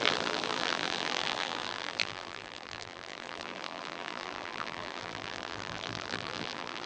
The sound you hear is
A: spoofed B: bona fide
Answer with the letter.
A